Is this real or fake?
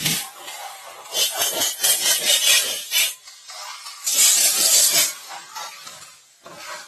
real